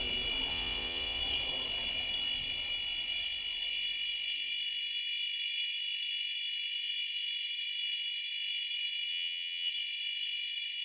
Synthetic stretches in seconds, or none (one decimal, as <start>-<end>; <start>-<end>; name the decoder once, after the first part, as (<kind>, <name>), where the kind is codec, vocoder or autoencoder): 0.5-1.2 (vocoder, Vocos); 9.1-9.7